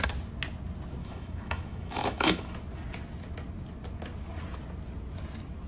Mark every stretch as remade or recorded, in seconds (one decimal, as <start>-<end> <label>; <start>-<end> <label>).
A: 0.0-1.0 recorded; 1.0-2.5 remade; 2.5-5.7 recorded